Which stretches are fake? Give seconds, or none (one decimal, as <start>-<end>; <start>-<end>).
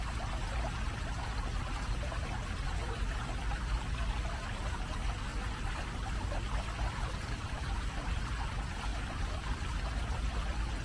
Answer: 5.3-8.3; 8.9-9.6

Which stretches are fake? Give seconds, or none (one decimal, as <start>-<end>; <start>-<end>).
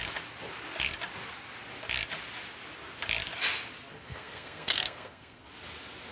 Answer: 3.9-5.4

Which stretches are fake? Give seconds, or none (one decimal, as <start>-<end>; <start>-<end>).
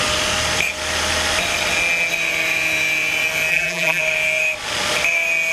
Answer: 3.5-4.0